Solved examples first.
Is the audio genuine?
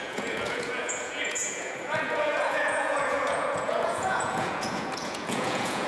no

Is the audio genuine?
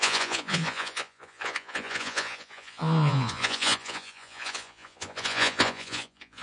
no